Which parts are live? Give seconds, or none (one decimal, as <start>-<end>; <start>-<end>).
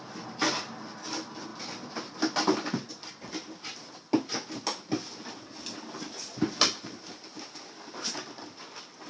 0.0-9.1